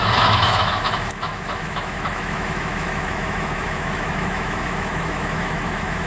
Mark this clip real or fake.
fake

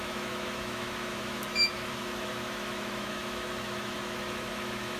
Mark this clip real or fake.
fake